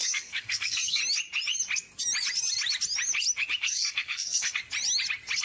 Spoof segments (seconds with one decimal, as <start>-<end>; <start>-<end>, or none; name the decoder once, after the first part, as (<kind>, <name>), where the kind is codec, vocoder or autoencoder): 0.0-1.0 (codec, SNAC); 3.6-4.6